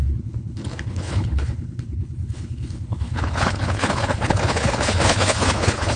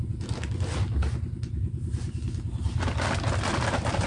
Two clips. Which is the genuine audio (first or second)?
second